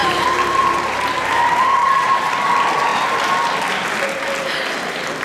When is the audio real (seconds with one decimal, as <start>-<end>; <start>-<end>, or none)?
1.3-1.8; 2.3-5.2